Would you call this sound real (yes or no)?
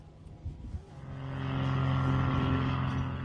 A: yes